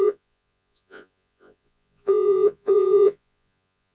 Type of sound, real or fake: fake